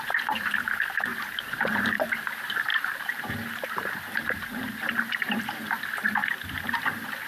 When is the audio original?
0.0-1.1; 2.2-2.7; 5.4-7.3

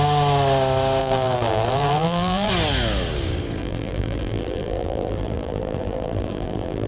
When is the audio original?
0.0-1.0; 2.5-3.6

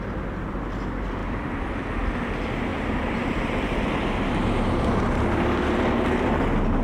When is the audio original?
0.0-1.2; 2.1-2.7; 4.9-6.8

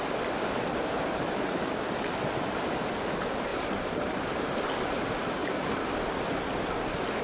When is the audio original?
0.0-0.7; 1.9-3.5; 4.6-5.4; 6.2-7.2

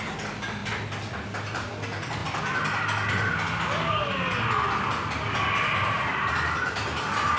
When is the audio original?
0.0-7.4